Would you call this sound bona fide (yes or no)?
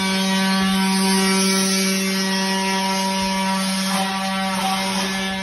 yes